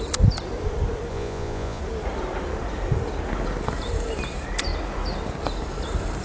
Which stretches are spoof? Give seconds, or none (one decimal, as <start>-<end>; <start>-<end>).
1.1-1.8